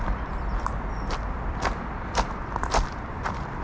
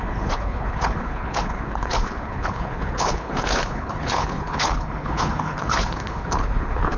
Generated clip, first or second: second